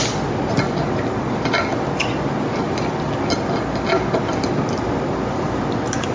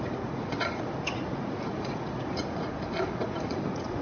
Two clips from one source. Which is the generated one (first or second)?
second